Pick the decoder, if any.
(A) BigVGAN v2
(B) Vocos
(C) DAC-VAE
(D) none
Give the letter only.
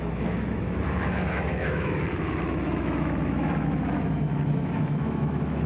C